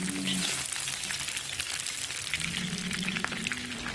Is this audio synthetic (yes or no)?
no